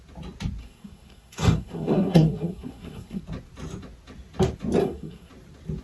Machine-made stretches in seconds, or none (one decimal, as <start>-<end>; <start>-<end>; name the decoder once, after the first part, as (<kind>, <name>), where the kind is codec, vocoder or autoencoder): 0.6-3.2 (codec, SNAC); 4.8-5.3